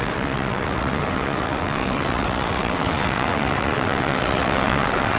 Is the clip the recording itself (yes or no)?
no